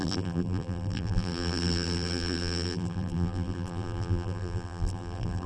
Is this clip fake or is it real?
fake